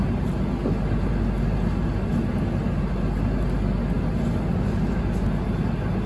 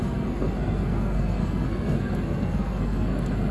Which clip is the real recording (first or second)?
first